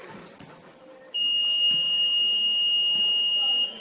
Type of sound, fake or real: real